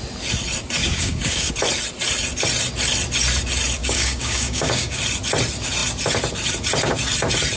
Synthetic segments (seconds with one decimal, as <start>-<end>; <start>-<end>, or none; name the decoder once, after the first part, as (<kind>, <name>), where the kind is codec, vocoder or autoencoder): 0.8-1.5 (codec, DAC); 3.8-5.0